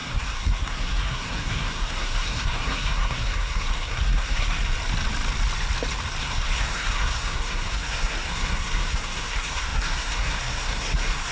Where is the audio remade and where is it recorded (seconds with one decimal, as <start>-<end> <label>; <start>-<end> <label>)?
0.0-4.6 remade; 4.6-6.2 recorded; 6.2-11.3 remade